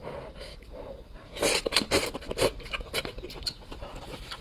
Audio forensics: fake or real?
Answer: real